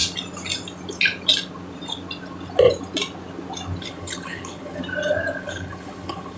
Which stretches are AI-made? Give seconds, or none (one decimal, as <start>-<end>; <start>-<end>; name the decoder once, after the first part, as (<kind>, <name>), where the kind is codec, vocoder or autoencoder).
3.8-4.8 (codec, HILCodec); 5.4-6.4